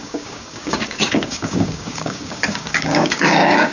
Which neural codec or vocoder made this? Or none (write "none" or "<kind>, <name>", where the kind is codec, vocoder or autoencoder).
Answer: codec, DAC